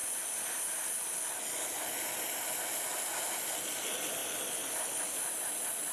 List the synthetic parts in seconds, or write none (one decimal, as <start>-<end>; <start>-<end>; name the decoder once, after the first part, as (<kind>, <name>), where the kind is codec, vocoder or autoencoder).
none